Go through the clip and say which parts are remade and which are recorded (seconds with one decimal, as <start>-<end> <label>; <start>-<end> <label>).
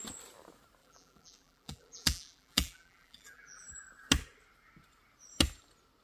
0.0-0.8 recorded; 0.8-3.7 remade; 3.7-6.0 recorded